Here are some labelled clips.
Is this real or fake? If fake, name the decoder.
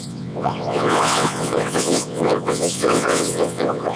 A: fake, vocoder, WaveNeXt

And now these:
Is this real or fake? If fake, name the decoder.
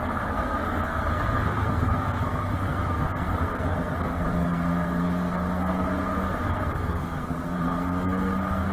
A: fake, codec, SNAC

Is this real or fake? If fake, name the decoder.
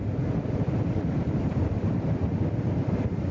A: real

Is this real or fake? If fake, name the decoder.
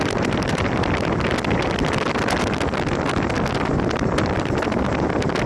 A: real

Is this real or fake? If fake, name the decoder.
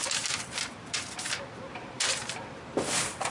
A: fake, vocoder, BigVGAN v2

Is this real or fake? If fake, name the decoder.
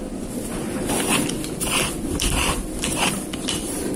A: fake, vocoder, BigVGAN v2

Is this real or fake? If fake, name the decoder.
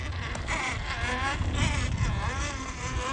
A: real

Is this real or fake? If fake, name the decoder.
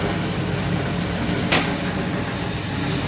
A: real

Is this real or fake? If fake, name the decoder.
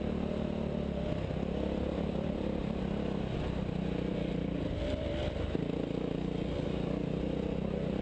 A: real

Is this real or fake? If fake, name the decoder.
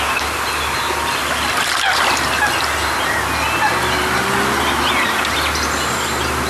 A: real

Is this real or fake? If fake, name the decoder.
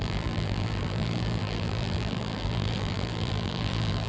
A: fake, vocoder, BigVGAN v2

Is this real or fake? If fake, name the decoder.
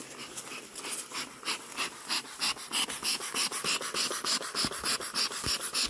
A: real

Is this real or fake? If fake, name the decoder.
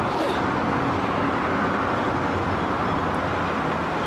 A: real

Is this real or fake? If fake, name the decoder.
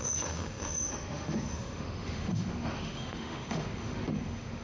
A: fake, autoencoder, DAC-VAE